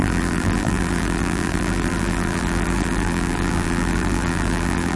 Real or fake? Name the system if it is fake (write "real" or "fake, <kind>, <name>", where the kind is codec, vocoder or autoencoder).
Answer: fake, vocoder, BigVGAN v2